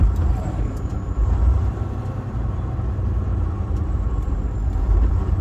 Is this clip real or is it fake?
fake